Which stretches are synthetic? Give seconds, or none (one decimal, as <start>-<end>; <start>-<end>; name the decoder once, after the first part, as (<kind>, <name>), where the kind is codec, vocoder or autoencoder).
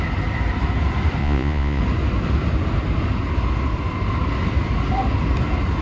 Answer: 1.2-1.8 (vocoder, Vocos)